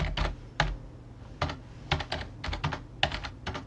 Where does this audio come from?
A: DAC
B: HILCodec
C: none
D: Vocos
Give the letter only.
C